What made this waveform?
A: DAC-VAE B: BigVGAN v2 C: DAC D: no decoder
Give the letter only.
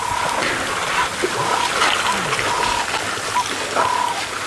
D